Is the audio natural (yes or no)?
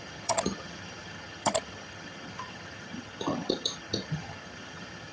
no